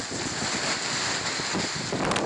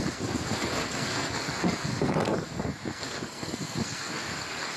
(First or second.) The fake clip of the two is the second